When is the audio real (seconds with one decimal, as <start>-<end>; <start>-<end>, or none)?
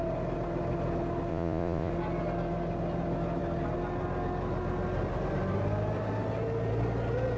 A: 0.0-1.3; 1.9-7.4